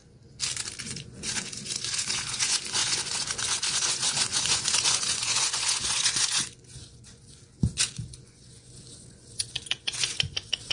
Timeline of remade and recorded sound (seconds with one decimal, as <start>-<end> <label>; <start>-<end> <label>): 0.0-0.8 recorded; 0.8-10.7 remade